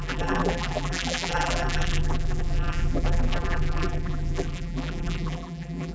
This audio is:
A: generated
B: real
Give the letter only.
A